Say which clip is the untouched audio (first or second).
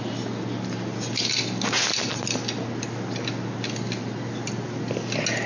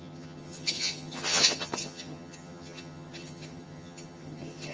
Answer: first